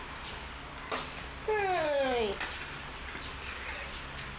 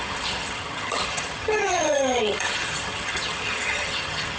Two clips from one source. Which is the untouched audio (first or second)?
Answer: first